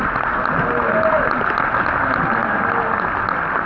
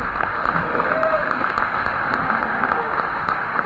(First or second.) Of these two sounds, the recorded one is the first